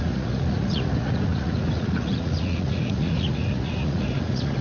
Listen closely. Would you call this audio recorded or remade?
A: remade